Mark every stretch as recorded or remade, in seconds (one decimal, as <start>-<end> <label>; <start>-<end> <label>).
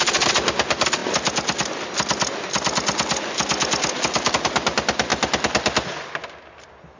0.0-7.0 recorded